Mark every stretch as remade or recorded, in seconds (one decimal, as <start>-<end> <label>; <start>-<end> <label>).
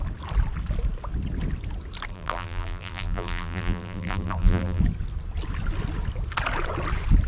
0.0-2.1 recorded; 2.1-4.8 remade; 4.8-7.3 recorded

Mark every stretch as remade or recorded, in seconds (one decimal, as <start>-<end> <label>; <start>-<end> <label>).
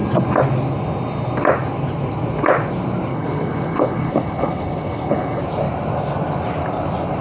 0.0-3.1 recorded; 3.1-5.4 remade; 5.4-7.2 recorded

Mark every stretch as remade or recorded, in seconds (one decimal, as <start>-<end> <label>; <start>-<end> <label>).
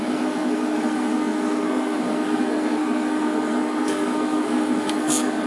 0.0-5.5 remade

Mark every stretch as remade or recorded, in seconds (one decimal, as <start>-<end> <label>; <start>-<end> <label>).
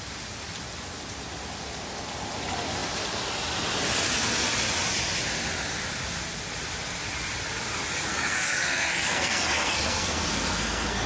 0.0-8.1 recorded; 8.1-11.1 remade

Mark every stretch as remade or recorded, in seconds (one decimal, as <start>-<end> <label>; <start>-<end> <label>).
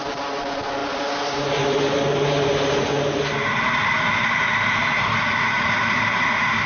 0.0-6.7 recorded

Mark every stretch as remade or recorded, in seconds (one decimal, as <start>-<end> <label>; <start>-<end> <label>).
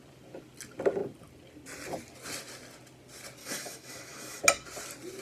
0.0-3.4 recorded; 3.4-4.4 remade; 4.4-5.2 recorded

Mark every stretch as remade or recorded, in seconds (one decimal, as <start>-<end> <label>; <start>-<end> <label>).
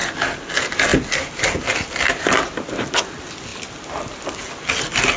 0.0-5.2 recorded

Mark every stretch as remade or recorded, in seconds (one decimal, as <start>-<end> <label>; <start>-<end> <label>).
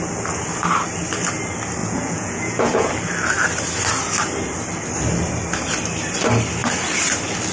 0.0-1.8 recorded; 1.8-2.9 remade; 2.9-7.5 recorded